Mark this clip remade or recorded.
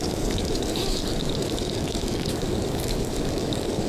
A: remade